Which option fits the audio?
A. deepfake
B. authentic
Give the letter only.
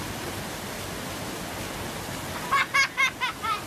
B